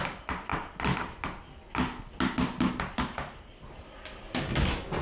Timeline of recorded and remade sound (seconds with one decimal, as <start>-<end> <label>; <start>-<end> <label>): 0.0-5.0 recorded